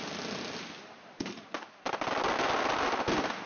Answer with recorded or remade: recorded